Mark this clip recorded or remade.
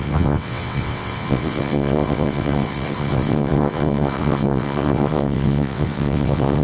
remade